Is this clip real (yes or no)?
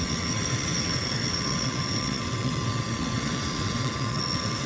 no